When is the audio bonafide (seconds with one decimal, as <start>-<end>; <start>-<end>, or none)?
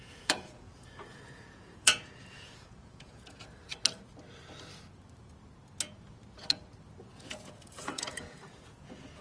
3.7-7.1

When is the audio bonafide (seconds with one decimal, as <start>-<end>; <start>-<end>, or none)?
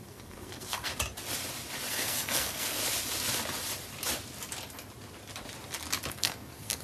0.9-1.9; 2.8-6.1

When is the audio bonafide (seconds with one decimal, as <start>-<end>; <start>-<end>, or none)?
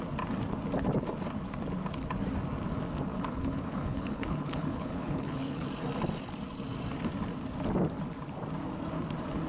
0.0-3.1; 5.7-9.5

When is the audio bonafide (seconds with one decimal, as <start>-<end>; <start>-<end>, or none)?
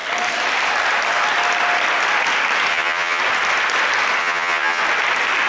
0.0-2.7; 3.2-4.2; 4.8-5.5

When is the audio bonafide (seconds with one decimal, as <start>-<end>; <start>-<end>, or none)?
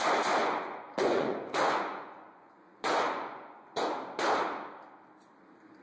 0.0-0.4; 3.9-5.8